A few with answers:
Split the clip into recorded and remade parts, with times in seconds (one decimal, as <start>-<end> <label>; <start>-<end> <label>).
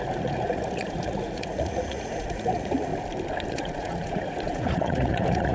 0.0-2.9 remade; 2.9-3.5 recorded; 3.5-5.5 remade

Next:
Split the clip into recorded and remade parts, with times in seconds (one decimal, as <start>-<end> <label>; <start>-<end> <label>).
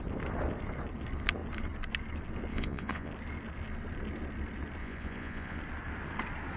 0.0-2.5 recorded; 2.5-3.1 remade; 3.1-4.8 recorded; 4.8-5.6 remade; 5.6-6.6 recorded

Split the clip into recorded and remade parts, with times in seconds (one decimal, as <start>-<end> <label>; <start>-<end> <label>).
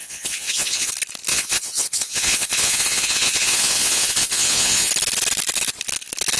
0.0-0.9 remade; 0.9-1.3 recorded; 1.3-4.9 remade; 4.9-6.4 recorded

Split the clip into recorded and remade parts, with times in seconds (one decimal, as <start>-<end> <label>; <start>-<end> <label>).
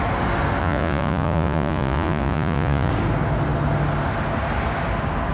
0.0-0.6 recorded; 0.6-2.9 remade; 2.9-5.3 recorded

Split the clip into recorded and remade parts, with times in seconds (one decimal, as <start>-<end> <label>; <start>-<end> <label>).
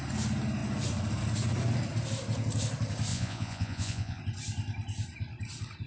0.0-3.1 recorded; 3.1-4.2 remade; 4.2-5.9 recorded